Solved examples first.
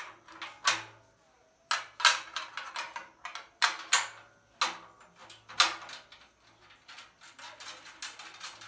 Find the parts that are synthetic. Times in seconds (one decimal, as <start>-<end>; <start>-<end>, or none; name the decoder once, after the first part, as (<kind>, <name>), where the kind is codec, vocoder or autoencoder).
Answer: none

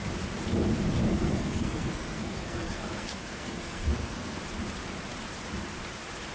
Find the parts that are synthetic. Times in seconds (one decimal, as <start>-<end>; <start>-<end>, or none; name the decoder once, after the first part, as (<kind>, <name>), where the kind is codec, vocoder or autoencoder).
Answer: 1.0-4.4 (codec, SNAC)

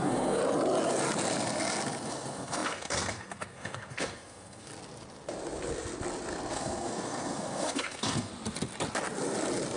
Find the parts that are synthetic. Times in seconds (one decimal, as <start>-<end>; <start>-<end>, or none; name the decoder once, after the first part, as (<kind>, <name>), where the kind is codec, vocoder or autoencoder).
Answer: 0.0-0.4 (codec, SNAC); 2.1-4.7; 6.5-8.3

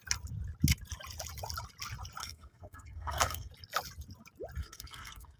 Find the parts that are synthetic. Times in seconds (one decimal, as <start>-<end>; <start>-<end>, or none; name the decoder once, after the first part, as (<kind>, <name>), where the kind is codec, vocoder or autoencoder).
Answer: 2.2-3.5 (codec, SNAC); 4.6-5.4

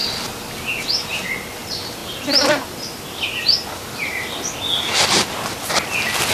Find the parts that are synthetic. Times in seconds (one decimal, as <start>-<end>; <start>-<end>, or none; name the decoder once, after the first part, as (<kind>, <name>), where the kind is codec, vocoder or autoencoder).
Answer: none

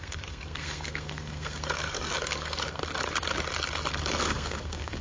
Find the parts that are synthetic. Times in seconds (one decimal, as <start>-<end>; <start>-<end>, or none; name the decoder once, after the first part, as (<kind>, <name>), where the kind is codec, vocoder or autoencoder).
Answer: 0.0-2.8 (codec, SNAC); 4.2-5.0